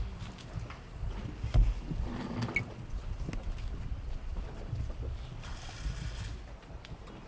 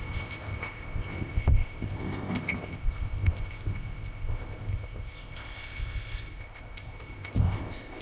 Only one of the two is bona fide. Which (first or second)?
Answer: first